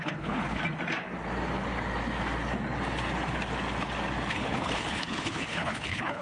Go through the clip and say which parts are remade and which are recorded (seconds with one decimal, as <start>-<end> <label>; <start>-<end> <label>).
0.0-0.6 remade; 0.6-4.3 recorded; 4.3-6.2 remade